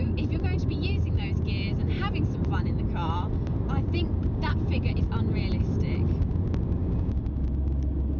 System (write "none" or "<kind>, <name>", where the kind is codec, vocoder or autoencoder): none